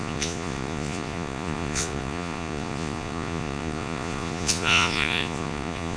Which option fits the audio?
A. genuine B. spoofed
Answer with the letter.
B